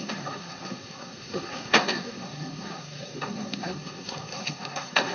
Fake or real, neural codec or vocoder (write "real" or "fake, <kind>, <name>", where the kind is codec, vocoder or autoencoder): fake, codec, SNAC